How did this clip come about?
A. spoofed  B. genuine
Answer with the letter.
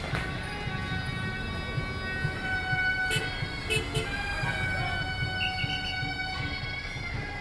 B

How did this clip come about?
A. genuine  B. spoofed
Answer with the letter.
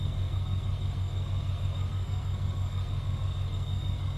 B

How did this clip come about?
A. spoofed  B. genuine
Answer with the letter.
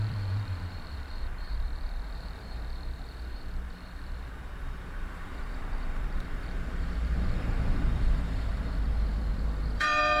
A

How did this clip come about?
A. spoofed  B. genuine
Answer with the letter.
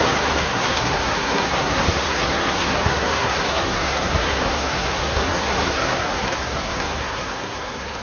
A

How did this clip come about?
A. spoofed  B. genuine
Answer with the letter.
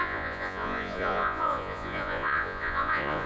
A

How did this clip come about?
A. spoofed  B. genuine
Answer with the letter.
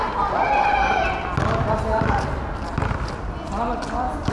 B